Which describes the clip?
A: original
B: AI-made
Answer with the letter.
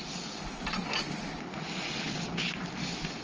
A